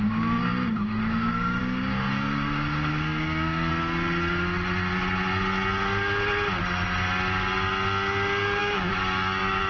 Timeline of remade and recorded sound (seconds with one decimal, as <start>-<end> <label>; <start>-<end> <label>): 0.0-3.7 remade; 3.7-8.6 recorded; 8.6-9.7 remade